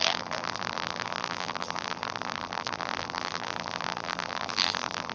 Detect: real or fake fake